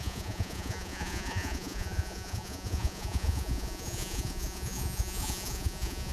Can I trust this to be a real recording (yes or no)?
no